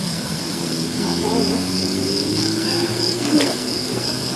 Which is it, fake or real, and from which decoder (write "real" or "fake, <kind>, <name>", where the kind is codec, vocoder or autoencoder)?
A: fake, codec, SNAC